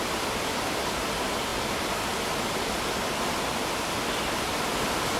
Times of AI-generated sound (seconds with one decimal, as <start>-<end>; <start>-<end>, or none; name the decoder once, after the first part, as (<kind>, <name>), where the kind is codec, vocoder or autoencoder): none